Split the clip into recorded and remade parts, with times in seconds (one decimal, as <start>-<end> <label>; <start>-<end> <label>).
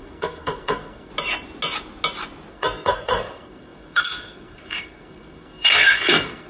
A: 0.0-1.1 remade; 1.1-2.5 recorded; 2.5-6.5 remade